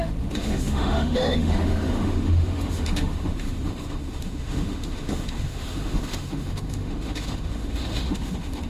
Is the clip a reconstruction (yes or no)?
yes